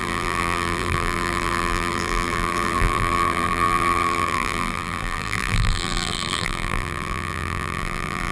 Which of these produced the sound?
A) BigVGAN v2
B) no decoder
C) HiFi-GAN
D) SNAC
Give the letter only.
A